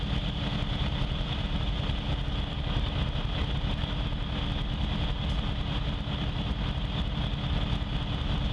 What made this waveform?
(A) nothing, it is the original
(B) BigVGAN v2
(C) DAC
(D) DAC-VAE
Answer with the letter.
A